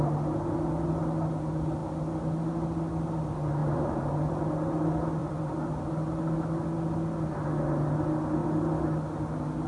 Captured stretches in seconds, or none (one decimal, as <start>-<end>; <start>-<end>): 0.0-3.6; 4.4-5.2; 6.2-9.7